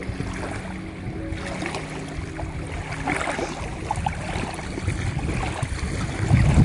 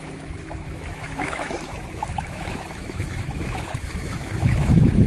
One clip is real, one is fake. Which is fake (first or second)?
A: second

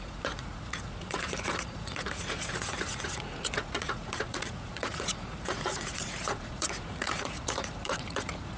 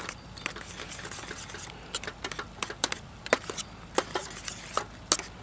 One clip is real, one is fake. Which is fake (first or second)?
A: first